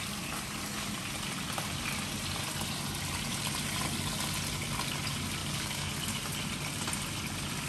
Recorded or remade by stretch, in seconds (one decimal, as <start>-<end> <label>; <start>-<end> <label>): 0.0-5.4 recorded; 5.4-5.9 remade; 5.9-7.7 recorded